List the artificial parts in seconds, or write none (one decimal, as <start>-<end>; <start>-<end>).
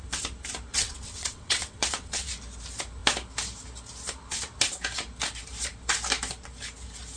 0.7-2.3